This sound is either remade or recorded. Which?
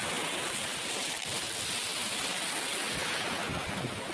recorded